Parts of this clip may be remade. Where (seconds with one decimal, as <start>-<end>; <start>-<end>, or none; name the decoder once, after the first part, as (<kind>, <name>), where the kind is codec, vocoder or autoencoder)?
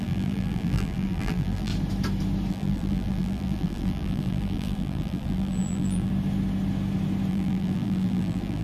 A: 0.0-1.7 (vocoder, BigVGAN v2); 2.5-6.1; 7.3-8.6